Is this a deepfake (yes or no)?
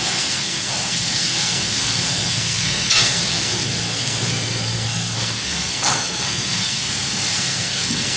yes